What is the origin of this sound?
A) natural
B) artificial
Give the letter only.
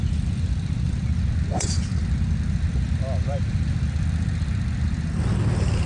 B